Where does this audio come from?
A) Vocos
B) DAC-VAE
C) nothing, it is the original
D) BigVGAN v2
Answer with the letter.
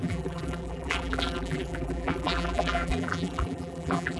D